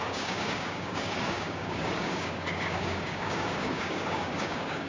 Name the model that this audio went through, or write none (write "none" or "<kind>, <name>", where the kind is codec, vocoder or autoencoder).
codec, DAC